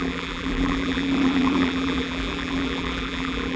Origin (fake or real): fake